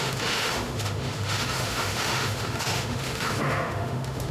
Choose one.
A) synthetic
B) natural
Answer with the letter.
A